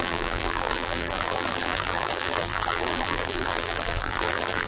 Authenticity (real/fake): fake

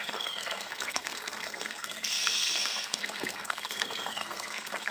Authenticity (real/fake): fake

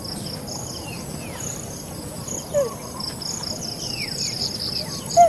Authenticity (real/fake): real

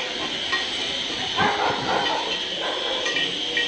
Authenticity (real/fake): real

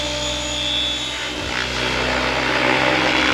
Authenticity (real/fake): real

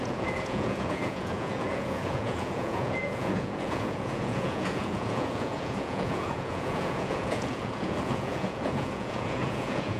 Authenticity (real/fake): fake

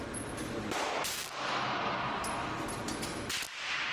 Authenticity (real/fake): real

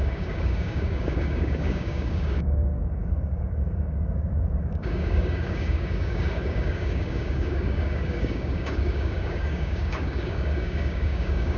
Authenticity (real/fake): fake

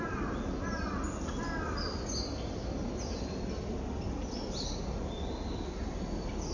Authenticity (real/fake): real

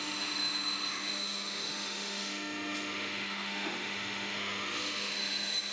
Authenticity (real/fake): fake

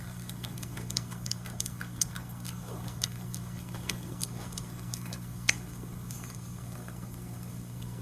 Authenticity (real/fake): fake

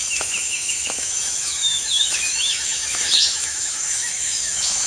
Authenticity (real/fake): fake